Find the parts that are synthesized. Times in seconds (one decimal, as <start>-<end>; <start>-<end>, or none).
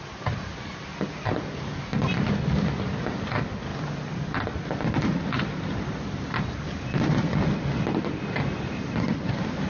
none